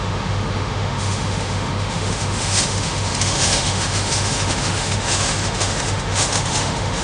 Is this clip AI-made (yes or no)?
yes